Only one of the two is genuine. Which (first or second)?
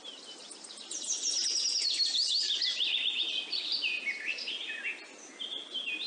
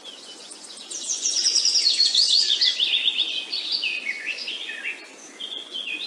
first